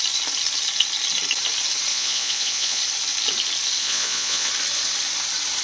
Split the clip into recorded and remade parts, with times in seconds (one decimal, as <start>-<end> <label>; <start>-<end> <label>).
0.0-1.9 recorded; 1.9-2.8 remade; 2.8-3.8 recorded; 3.8-4.5 remade; 4.5-5.6 recorded